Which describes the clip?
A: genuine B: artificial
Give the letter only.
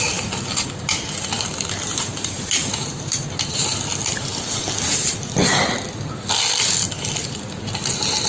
A